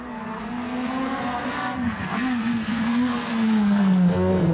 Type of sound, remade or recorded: remade